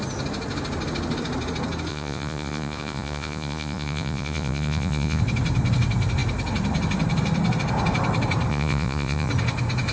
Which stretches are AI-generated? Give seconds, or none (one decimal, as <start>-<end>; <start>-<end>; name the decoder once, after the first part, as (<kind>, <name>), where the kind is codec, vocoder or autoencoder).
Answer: 1.9-5.2 (vocoder, Vocos); 8.5-9.3